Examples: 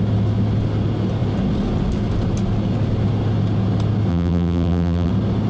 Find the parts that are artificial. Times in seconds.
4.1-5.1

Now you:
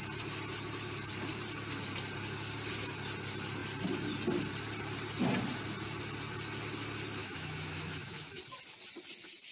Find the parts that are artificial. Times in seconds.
7.2-8.4

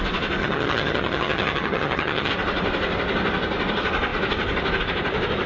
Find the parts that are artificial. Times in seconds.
0.4-2.3